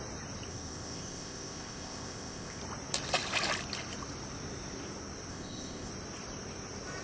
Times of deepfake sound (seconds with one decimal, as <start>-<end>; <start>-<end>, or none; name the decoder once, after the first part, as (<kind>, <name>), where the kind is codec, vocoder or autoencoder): 0.5-2.6 (codec, ZipCodec); 5.3-5.9